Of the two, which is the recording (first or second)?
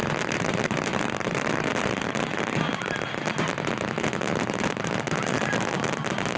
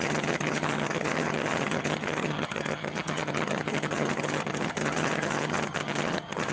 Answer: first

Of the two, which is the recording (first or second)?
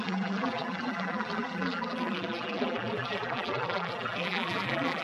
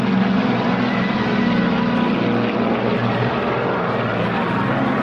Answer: second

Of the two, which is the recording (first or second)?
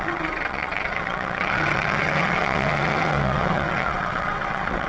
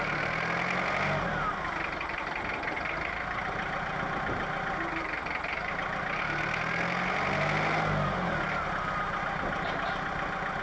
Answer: second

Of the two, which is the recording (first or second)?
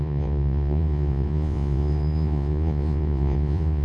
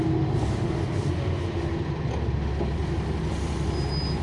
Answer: second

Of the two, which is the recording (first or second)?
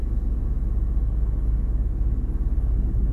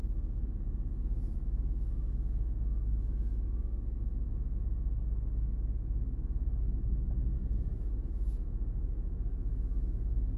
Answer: first